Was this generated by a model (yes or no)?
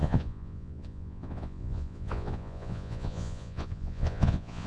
yes